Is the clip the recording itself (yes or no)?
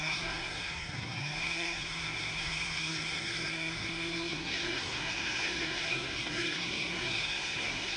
no